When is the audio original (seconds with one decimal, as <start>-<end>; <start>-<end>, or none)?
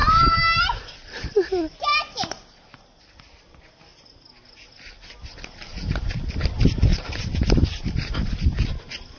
0.8-1.9; 2.7-6.9; 8.4-9.2